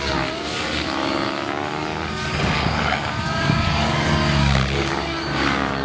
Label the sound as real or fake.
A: fake